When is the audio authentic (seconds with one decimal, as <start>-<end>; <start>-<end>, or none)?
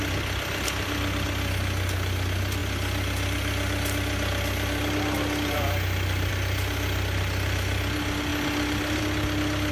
0.0-9.7